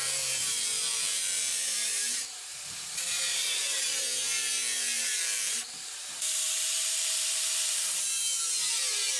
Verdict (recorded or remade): remade